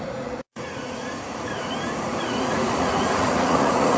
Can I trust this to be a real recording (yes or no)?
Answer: no